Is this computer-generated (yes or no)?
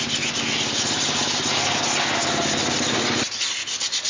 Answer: no